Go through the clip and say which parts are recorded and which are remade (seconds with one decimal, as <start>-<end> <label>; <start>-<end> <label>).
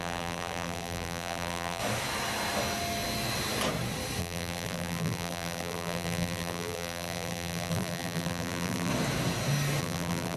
0.0-1.8 remade; 1.8-4.2 recorded; 4.2-8.9 remade; 8.9-9.8 recorded; 9.8-10.4 remade